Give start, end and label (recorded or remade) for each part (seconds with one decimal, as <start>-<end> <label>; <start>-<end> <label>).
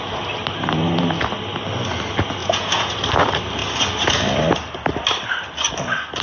0.0-2.4 recorded; 2.4-2.9 remade; 2.9-6.2 recorded